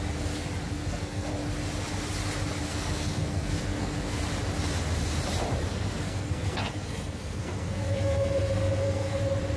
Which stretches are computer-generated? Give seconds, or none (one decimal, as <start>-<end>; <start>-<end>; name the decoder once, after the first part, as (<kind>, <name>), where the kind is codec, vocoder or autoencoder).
0.7-1.3 (codec, SNAC); 2.7-4.2; 5.7-9.2